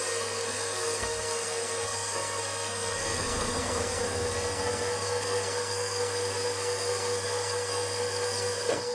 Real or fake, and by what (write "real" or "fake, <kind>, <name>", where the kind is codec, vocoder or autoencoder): fake, codec, SNAC